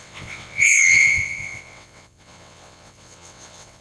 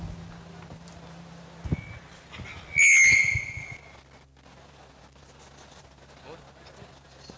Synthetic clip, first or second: first